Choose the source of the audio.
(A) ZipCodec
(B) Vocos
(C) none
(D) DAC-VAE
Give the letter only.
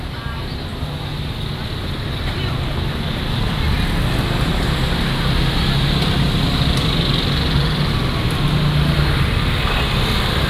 C